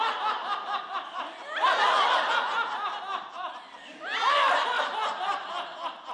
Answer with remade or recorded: recorded